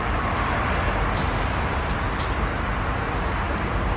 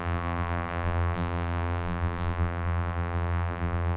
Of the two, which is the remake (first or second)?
second